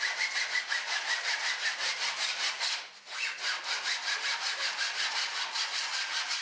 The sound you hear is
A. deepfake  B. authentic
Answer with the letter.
B